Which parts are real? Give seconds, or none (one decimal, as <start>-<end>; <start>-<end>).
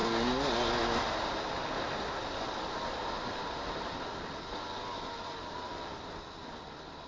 0.0-2.2; 5.7-7.1